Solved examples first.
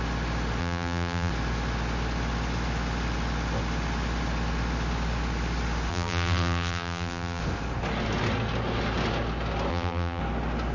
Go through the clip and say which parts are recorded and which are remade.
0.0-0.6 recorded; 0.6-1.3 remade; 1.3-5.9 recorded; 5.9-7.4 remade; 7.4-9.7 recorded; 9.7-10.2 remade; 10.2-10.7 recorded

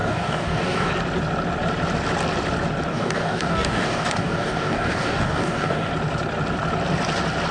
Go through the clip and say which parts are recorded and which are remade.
0.0-0.9 remade; 0.9-2.9 recorded; 2.9-5.9 remade; 5.9-7.5 recorded

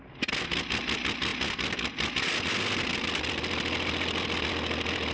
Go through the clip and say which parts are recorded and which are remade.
0.0-5.1 recorded

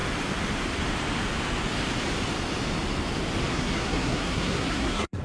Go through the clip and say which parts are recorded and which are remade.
0.0-3.5 recorded; 3.5-5.2 remade